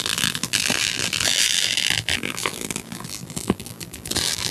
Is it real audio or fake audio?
fake